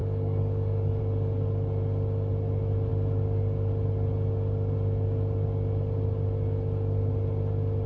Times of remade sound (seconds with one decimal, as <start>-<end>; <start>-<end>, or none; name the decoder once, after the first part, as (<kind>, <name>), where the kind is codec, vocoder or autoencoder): 0.0-1.0 (codec, DAC)